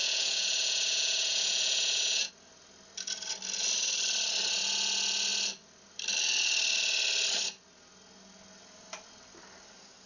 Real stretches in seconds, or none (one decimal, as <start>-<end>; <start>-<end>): 2.3-10.1